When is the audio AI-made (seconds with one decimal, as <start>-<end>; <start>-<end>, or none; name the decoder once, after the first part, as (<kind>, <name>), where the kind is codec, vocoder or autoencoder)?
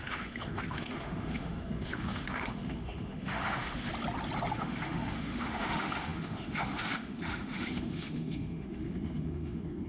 0.0-3.9 (autoencoder, DAC-VAE); 4.5-9.9